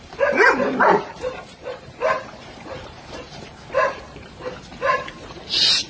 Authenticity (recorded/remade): remade